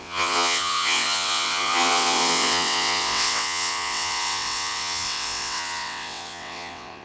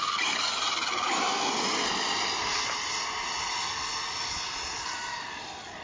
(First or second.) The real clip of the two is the second